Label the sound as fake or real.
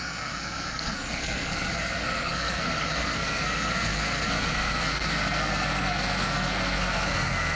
fake